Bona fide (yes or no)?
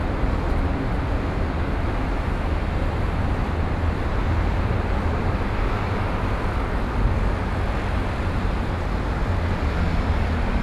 yes